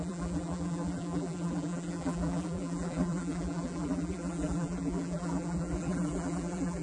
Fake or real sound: fake